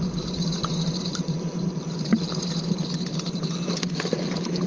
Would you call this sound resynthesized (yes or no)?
yes